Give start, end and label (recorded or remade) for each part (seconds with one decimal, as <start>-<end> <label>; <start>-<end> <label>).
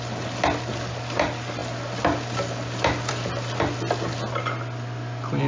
0.0-5.5 recorded